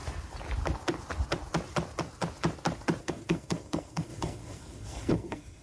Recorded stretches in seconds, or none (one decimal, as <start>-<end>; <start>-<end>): 0.0-3.0